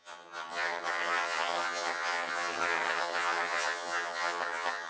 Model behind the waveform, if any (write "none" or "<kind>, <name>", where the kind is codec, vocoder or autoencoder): vocoder, HiFi-GAN